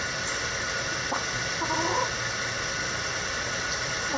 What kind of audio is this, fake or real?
real